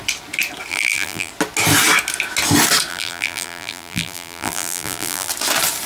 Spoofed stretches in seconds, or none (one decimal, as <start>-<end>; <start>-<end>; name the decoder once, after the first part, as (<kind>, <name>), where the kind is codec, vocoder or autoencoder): 0.7-1.3 (vocoder, BigVGAN v2); 2.9-5.3